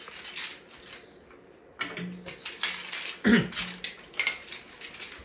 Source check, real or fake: real